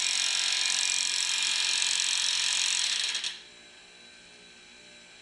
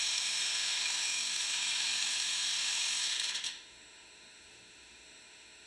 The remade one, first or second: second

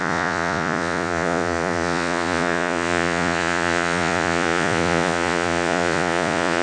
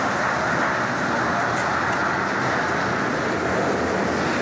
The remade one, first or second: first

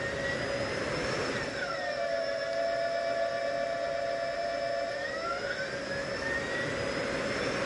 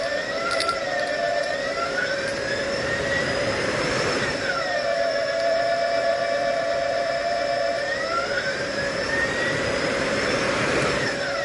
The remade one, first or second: second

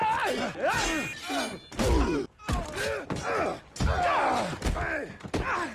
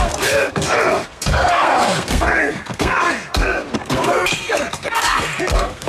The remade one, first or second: second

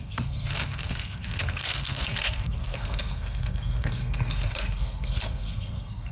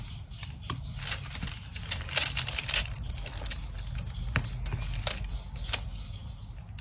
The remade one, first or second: first